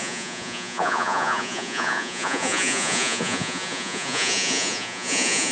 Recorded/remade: remade